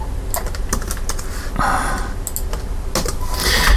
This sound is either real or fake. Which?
real